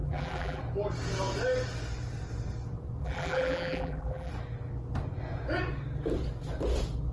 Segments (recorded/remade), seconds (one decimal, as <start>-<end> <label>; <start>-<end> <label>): 0.0-0.6 remade; 0.6-3.0 recorded; 3.0-4.3 remade; 4.3-7.1 recorded